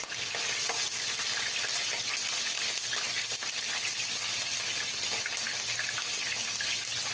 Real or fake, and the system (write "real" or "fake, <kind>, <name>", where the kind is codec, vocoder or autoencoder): real